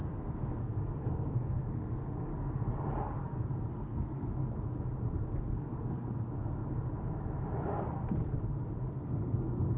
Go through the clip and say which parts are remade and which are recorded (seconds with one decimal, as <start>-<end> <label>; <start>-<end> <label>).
0.0-2.3 remade; 2.3-3.7 recorded; 3.7-4.4 remade; 4.4-5.4 recorded; 5.4-6.6 remade; 6.6-8.8 recorded; 8.8-9.8 remade